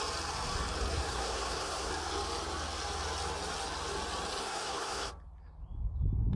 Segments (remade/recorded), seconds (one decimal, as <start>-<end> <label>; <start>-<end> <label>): 0.0-0.9 recorded; 0.9-1.9 remade; 1.9-4.4 recorded; 4.4-5.1 remade; 5.1-6.4 recorded